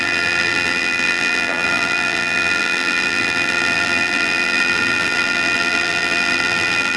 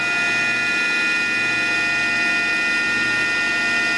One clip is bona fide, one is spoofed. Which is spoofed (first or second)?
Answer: first